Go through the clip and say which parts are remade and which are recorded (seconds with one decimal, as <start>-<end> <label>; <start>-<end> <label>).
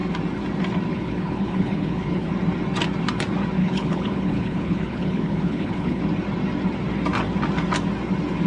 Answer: 0.0-0.9 recorded; 0.9-2.3 remade; 2.3-3.6 recorded; 3.6-6.0 remade; 6.0-8.5 recorded